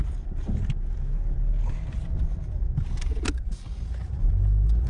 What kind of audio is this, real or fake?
real